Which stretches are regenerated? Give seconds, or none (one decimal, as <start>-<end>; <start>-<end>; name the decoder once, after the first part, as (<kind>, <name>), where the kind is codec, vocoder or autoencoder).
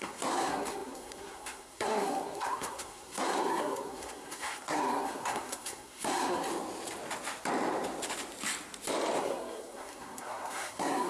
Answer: 0.0-6.5 (codec, SNAC); 9.2-11.1